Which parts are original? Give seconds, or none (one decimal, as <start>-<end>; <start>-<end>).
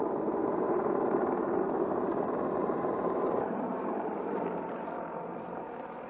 0.0-2.6; 4.4-6.1